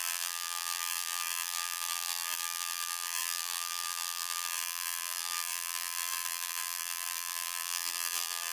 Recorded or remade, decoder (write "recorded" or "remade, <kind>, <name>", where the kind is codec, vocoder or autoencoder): remade, vocoder, BigVGAN v2